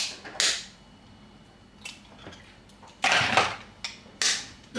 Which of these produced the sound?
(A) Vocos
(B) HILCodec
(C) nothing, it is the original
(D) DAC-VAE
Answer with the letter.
C